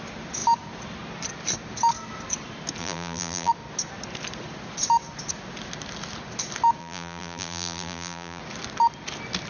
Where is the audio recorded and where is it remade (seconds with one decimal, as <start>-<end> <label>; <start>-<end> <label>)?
0.0-2.8 recorded; 2.8-3.5 remade; 3.5-6.8 recorded; 6.8-8.4 remade; 8.4-9.5 recorded